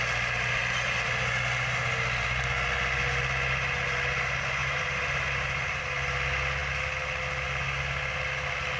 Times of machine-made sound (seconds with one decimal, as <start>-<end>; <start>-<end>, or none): 4.6-5.8